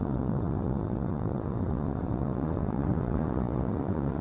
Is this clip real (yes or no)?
no